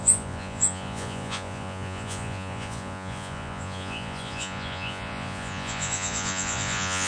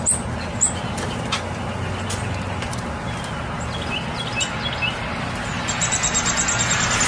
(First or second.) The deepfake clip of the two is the first